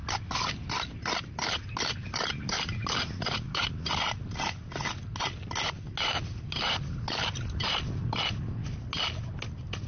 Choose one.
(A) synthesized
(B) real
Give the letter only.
B